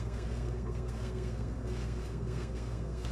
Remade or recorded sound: remade